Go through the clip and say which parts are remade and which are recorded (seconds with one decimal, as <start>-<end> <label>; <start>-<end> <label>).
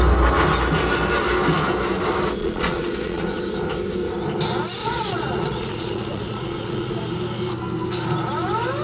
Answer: 0.0-2.4 recorded; 2.4-3.4 remade; 3.4-4.8 recorded; 4.8-7.0 remade; 7.0-8.8 recorded